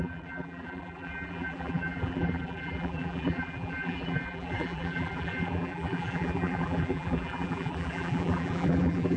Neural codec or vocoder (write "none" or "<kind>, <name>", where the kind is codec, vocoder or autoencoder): vocoder, BigVGAN v2